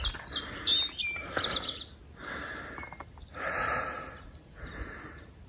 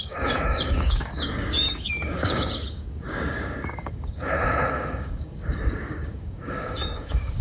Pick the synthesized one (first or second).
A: second